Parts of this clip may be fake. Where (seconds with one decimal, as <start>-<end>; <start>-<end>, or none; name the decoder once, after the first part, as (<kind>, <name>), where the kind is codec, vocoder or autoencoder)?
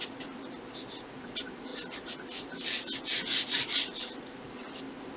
none